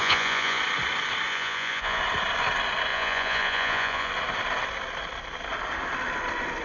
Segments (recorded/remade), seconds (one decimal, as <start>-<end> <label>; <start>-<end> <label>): 0.0-0.6 remade; 0.6-1.3 recorded; 1.3-2.0 remade; 2.0-2.9 recorded; 2.9-4.1 remade; 4.1-6.6 recorded

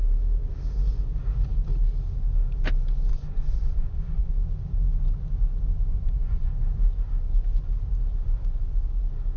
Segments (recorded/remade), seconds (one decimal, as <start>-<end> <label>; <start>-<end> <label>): 0.0-3.1 recorded; 3.1-4.3 remade; 4.3-5.9 recorded; 5.9-6.5 remade; 6.5-9.4 recorded

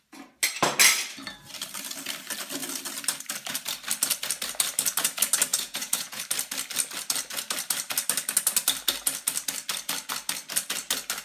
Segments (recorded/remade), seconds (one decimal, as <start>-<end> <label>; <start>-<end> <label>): 0.0-5.5 recorded; 5.5-6.2 remade; 6.2-11.2 recorded

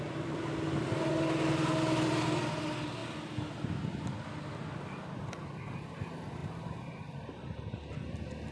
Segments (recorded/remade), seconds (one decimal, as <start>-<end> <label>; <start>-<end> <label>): 0.0-8.5 recorded

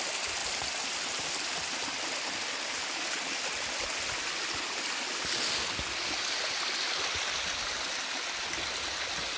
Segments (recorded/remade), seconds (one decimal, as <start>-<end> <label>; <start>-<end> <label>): 0.0-9.4 recorded